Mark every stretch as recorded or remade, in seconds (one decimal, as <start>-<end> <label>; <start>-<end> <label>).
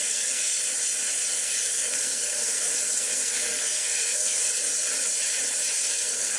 0.0-0.5 remade; 0.5-1.3 recorded; 1.3-4.7 remade; 4.7-5.9 recorded; 5.9-6.4 remade